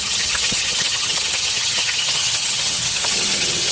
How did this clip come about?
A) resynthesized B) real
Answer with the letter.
A